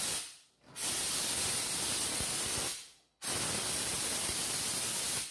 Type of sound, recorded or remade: recorded